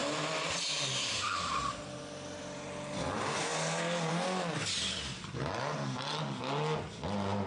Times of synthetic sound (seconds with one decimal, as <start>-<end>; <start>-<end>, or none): 0.0-1.7; 4.6-6.2